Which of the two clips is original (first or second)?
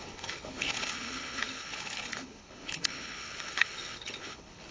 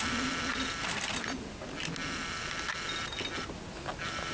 second